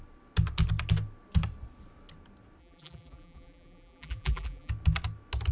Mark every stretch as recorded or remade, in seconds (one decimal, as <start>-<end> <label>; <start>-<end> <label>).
0.0-2.6 recorded; 2.6-4.7 remade; 4.7-5.5 recorded

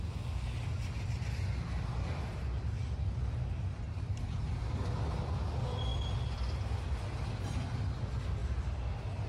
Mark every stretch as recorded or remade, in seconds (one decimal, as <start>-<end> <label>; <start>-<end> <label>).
0.0-9.3 recorded

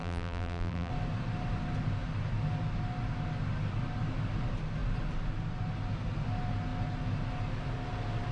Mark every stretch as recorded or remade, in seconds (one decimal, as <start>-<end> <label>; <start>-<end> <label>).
0.0-0.9 remade; 0.9-8.3 recorded

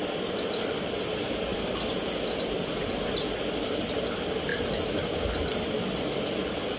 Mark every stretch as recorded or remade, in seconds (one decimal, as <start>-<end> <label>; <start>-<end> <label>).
0.0-6.8 recorded

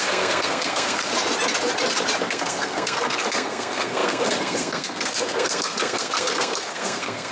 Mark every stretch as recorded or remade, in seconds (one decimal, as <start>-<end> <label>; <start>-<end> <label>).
0.0-1.1 remade; 1.1-2.3 recorded; 2.3-7.3 remade

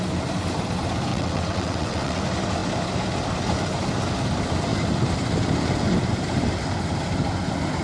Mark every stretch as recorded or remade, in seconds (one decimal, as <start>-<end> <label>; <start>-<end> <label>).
0.0-1.1 recorded; 1.1-2.2 remade; 2.2-7.8 recorded